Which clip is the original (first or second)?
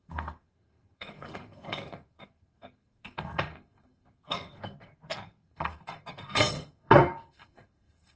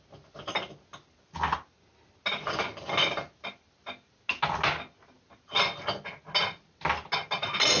second